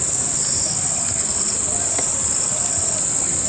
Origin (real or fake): real